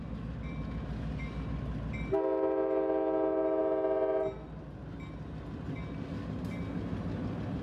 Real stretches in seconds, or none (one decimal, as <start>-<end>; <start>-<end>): 0.0-7.6